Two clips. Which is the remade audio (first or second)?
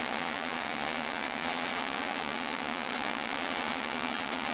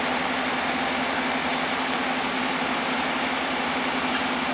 first